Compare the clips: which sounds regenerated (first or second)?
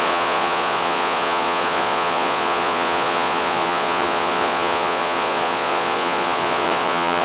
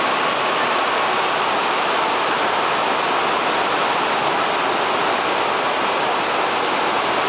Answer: first